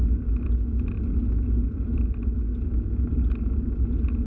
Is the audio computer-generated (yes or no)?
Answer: no